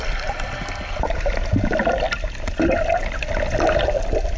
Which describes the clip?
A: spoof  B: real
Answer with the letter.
B